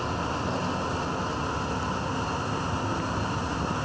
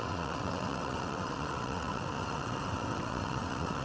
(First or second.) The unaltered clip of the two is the first